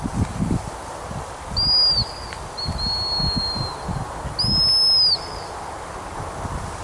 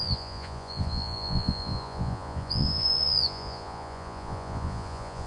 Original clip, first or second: first